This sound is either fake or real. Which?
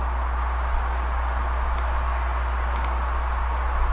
real